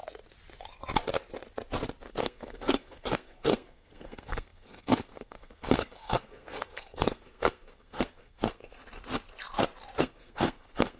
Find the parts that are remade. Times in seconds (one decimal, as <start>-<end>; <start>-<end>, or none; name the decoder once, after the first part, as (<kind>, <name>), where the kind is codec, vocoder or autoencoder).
2.1-8.8 (codec, SNAC); 10.0-11.0